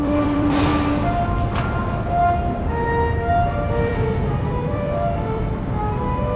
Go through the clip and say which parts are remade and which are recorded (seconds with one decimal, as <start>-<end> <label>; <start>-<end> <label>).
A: 0.0-0.7 remade; 0.7-3.3 recorded; 3.3-5.8 remade; 5.8-6.4 recorded